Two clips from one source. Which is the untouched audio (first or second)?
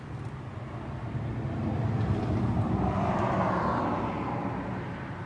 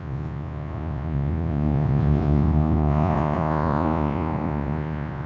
first